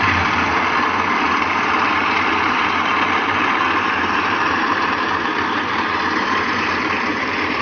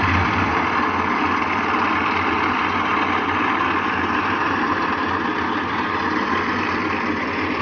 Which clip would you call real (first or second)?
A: second